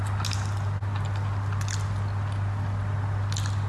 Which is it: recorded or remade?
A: recorded